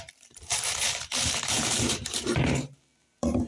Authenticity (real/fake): fake